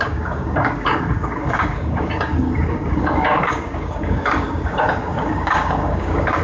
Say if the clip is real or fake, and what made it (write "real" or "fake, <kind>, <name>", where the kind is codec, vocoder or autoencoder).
fake, codec, DAC